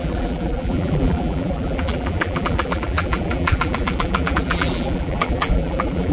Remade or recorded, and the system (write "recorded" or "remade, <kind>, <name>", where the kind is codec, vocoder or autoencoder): remade, vocoder, BigVGAN v2